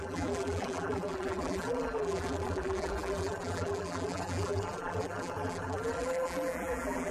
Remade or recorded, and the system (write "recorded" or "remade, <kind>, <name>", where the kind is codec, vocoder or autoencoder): remade, vocoder, BigVGAN v2